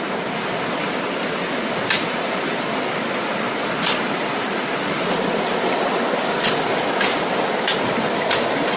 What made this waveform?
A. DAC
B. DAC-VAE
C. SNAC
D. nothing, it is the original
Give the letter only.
D